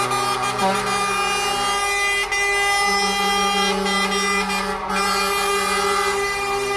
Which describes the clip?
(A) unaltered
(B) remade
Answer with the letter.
A